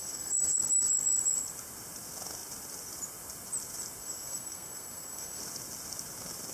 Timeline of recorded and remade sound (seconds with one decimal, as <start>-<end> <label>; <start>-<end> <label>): 0.0-0.6 remade; 0.6-4.0 recorded; 4.0-5.4 remade; 5.4-6.5 recorded